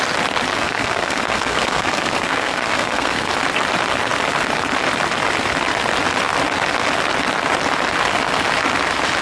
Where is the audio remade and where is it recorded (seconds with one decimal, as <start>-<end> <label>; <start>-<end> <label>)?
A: 0.0-0.5 recorded; 0.5-3.3 remade; 3.3-9.2 recorded